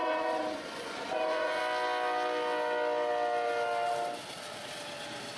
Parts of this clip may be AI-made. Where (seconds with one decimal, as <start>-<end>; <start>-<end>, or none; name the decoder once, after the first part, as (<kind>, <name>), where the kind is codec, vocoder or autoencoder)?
0.0-1.6 (vocoder, Vocos)